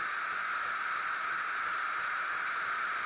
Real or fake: real